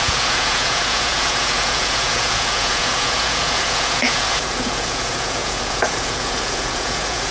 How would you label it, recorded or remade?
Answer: remade